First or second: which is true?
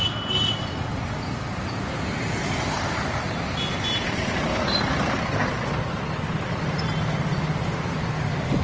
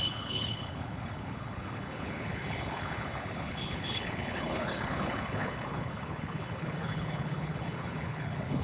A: first